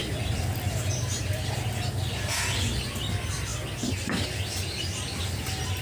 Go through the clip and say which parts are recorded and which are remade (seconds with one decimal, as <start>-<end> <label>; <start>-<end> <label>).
0.0-5.8 recorded